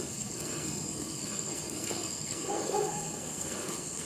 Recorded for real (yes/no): no